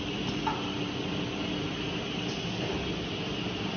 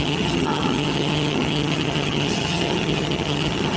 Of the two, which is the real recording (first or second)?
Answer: first